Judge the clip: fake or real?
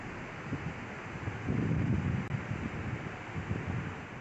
real